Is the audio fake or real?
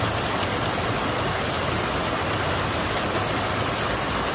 real